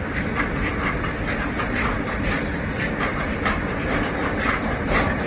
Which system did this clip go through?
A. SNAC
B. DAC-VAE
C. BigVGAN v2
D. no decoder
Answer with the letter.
C